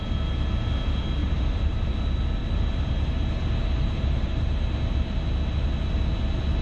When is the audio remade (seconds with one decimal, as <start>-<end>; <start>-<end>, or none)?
1.2-1.9; 2.4-4.6